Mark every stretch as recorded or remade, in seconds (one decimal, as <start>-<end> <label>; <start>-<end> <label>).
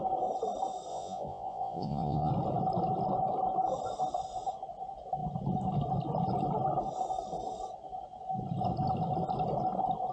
0.0-0.9 recorded; 0.9-2.3 remade; 2.3-10.1 recorded